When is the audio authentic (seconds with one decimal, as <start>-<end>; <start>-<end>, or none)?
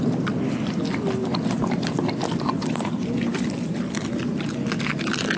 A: 0.0-1.2; 3.2-5.4